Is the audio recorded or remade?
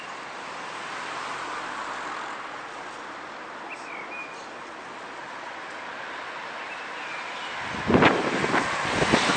recorded